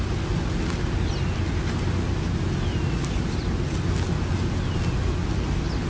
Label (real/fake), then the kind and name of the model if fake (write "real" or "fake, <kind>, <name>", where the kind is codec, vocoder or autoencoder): real